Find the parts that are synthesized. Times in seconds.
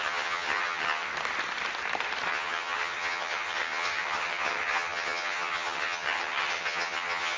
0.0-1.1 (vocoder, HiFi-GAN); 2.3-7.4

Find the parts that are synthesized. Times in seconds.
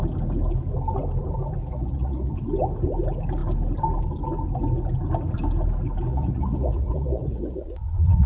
1.6-2.3 (vocoder, Vocos); 6.1-8.3